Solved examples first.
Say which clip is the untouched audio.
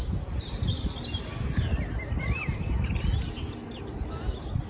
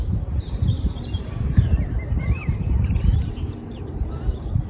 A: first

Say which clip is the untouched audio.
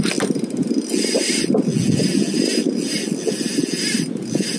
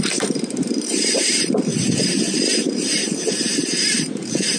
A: first